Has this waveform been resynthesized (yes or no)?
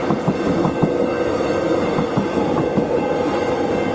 no